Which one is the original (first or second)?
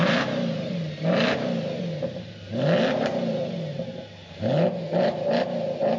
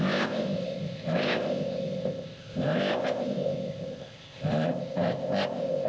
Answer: first